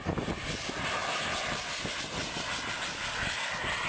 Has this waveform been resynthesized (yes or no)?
no